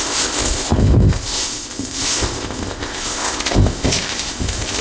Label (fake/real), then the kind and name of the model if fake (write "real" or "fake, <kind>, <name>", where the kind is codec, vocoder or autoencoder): fake, codec, ZipCodec